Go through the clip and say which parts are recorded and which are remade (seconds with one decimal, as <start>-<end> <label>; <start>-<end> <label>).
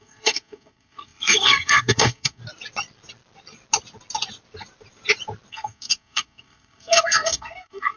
0.0-2.4 remade; 2.4-5.5 recorded; 5.5-8.0 remade